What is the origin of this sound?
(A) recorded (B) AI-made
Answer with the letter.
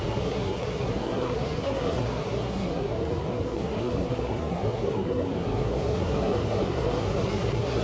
B